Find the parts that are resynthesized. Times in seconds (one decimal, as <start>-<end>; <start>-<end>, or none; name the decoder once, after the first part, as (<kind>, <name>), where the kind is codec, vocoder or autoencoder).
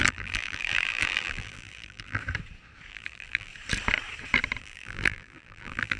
0.0-2.2 (vocoder, BigVGAN v2); 2.9-3.5; 4.6-6.0